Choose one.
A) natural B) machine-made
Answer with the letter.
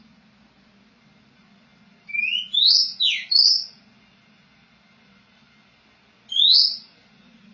A